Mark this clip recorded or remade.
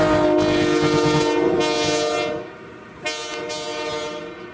recorded